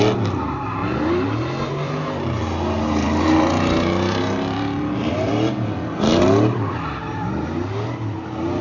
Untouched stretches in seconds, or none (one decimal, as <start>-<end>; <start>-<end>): 0.0-0.8; 5.1-8.6